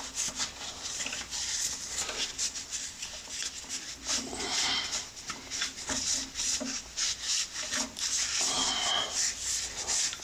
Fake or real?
real